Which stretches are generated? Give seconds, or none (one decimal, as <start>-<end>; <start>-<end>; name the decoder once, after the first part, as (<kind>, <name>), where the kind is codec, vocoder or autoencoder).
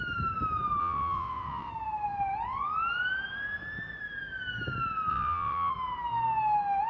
0.8-1.7 (vocoder, WaveNeXt); 5.1-5.7